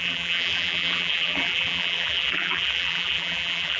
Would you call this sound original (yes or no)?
no